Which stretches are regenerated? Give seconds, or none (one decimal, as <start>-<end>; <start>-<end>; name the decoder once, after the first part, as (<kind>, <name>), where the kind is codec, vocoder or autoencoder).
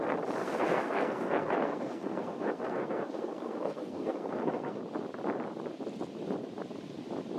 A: 0.4-4.8 (codec, SNAC)